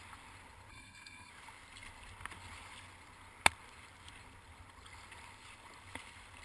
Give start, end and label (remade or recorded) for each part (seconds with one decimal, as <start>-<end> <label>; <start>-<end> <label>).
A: 0.0-0.7 recorded; 0.7-1.3 remade; 1.3-6.4 recorded